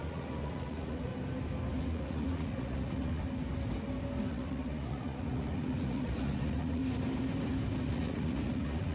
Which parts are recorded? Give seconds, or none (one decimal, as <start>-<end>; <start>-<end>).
1.1-1.8; 3.2-4.3; 6.8-7.9